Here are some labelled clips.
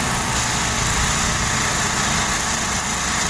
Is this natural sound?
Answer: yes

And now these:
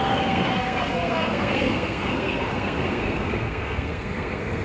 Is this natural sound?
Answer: no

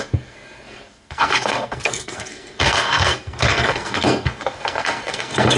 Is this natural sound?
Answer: no